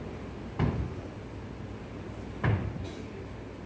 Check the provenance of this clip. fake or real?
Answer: real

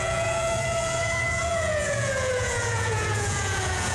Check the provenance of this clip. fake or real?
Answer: fake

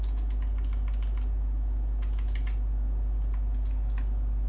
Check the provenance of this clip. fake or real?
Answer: real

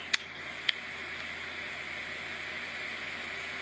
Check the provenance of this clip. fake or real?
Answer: real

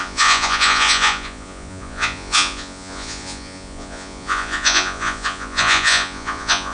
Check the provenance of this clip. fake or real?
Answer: fake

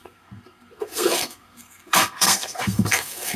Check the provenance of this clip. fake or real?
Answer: fake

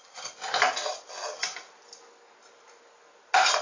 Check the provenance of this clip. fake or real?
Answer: real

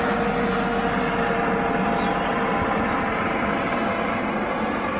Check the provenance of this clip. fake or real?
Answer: real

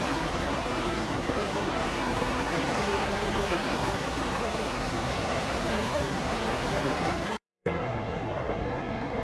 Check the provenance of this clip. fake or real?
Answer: fake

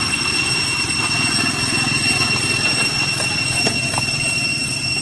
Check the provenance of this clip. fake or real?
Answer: real